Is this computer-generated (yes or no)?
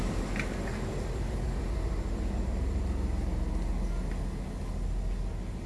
no